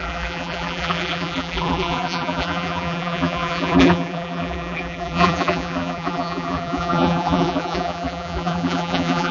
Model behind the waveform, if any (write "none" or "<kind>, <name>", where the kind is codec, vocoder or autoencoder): vocoder, BigVGAN v2